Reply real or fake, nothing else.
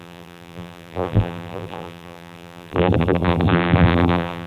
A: fake